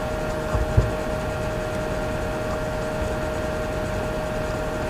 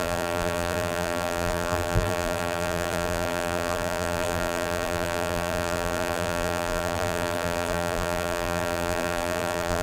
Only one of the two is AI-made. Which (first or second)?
second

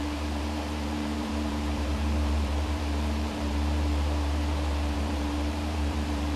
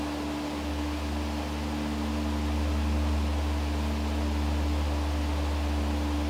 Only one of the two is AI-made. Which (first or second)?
first